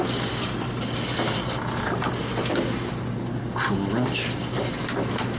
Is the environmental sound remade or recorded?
recorded